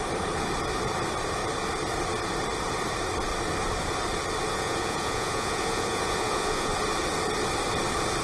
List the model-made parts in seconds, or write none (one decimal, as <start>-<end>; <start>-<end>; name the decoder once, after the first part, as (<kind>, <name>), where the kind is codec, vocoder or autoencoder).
4.5-6.7 (vocoder, Vocos)